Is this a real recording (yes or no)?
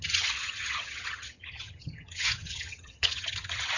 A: no